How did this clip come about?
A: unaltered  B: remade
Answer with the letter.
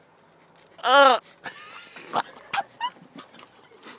A